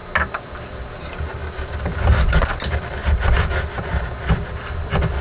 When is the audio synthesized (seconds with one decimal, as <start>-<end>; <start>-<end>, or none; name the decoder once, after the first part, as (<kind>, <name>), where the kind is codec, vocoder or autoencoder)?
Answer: none